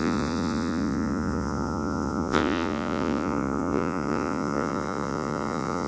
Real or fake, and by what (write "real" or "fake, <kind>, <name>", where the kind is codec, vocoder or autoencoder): fake, vocoder, Vocos